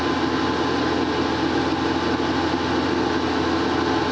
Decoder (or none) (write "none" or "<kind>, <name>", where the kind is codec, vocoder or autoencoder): none